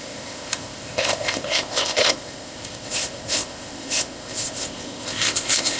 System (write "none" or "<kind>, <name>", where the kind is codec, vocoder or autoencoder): codec, ZipCodec